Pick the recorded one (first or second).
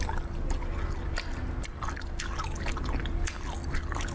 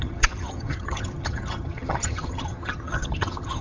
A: first